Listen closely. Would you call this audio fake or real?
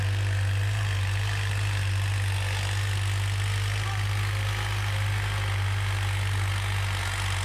real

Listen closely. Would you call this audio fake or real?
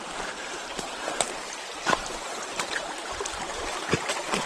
fake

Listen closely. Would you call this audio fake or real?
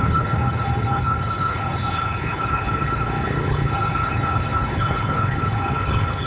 fake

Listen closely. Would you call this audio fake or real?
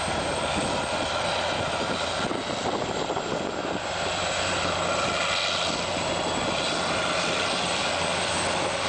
real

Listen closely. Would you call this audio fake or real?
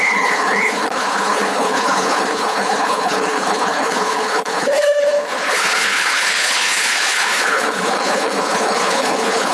fake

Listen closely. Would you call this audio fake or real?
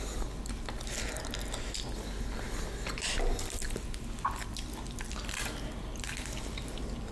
real